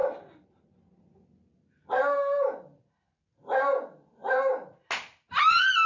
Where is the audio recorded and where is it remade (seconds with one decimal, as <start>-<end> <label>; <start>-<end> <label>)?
0.0-5.9 recorded